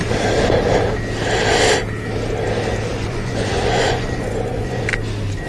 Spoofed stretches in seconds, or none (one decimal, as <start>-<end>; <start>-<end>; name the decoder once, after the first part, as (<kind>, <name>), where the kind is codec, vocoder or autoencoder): 2.9-4.8 (vocoder, Vocos)